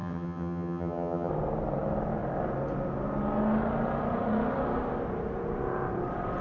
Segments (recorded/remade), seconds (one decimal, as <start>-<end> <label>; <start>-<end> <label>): 0.0-1.3 remade; 1.3-6.4 recorded